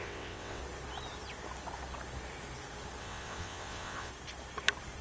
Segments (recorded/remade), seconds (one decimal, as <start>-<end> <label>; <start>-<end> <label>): 0.0-0.6 remade; 0.6-3.0 recorded; 3.0-4.1 remade; 4.1-5.0 recorded

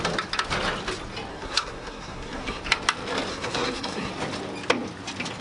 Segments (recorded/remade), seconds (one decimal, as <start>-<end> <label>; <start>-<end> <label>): 0.0-1.3 recorded; 1.3-2.6 remade; 2.6-3.3 recorded; 3.3-4.1 remade; 4.1-5.4 recorded

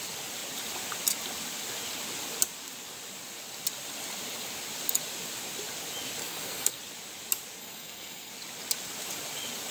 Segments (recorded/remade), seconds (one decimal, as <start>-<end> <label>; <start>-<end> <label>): 0.0-6.2 recorded; 6.2-6.8 remade; 6.8-7.6 recorded; 7.6-8.3 remade; 8.3-9.7 recorded

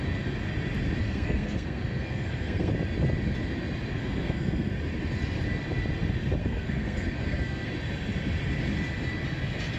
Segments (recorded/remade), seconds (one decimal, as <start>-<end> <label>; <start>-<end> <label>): 0.0-1.0 recorded; 1.0-2.7 remade; 2.7-3.9 recorded; 3.9-4.7 remade; 4.7-6.4 recorded; 6.4-7.7 remade; 7.7-9.8 recorded